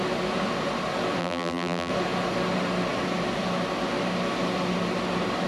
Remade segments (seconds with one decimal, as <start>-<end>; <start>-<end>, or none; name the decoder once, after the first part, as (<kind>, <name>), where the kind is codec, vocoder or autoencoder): 1.2-1.9 (vocoder, BigVGAN v2)